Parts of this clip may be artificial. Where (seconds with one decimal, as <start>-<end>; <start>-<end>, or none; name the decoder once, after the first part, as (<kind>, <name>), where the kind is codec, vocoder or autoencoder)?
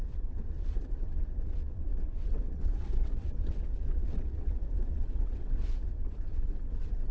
0.0-7.1 (vocoder, WaveNeXt)